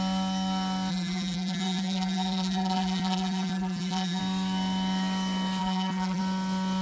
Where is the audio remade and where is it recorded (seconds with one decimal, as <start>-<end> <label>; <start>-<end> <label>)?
0.0-0.9 recorded; 0.9-4.2 remade; 4.2-5.6 recorded; 5.6-6.2 remade; 6.2-6.8 recorded